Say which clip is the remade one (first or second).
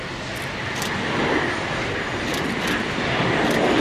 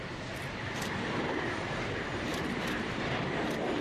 second